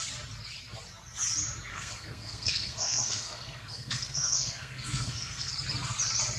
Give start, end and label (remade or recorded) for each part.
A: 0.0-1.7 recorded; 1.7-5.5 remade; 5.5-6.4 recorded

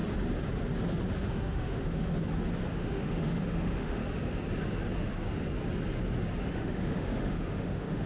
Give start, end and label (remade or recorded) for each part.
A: 0.0-1.3 recorded; 1.3-2.1 remade; 2.1-2.7 recorded; 2.7-4.0 remade; 4.0-6.4 recorded; 6.4-8.1 remade

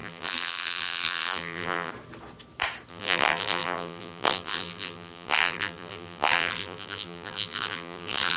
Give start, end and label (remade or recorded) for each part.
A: 0.0-1.9 remade; 1.9-2.9 recorded; 2.9-8.4 remade

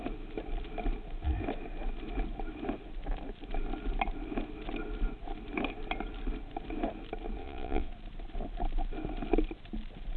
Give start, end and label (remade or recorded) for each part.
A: 0.0-7.4 recorded; 7.4-7.9 remade; 7.9-10.2 recorded

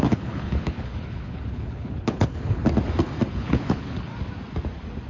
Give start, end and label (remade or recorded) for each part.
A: 0.0-2.6 remade; 2.6-3.3 recorded; 3.3-4.1 remade; 4.1-5.1 recorded

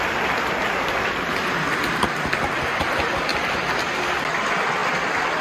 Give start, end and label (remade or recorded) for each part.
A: 0.0-5.4 recorded

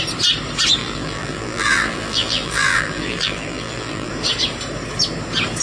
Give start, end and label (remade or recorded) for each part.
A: 0.0-0.8 recorded; 0.8-4.1 remade; 4.1-5.6 recorded